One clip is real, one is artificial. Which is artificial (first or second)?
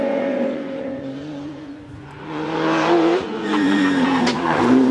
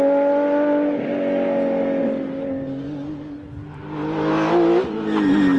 first